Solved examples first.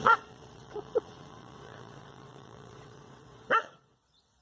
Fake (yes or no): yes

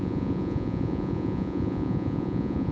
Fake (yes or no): yes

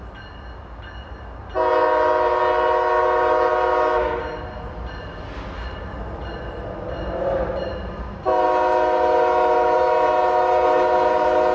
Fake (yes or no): no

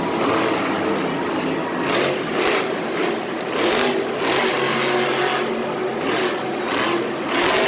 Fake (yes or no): no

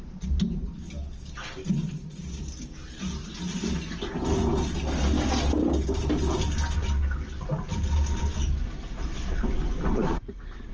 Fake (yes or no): no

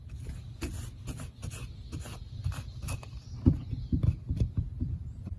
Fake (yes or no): no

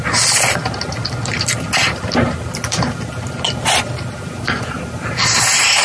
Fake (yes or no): no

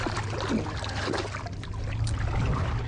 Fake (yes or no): no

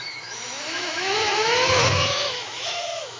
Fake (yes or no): yes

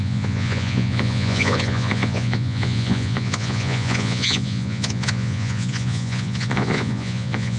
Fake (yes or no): yes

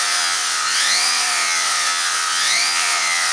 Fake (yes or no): yes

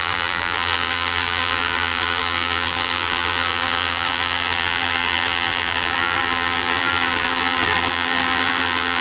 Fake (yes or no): yes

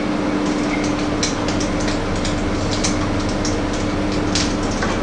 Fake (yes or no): no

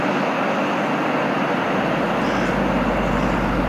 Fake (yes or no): no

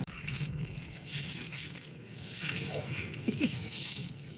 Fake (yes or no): yes